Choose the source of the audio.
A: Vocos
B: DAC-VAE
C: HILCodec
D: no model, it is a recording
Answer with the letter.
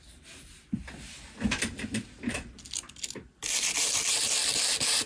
D